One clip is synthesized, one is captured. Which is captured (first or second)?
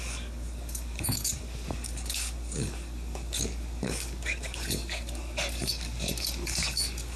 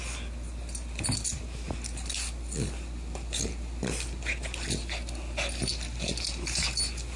second